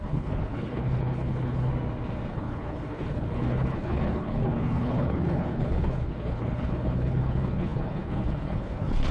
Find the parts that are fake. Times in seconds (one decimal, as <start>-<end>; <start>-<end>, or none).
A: 0.0-1.7; 2.3-9.1